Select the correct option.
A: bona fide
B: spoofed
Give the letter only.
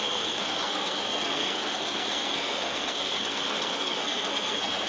B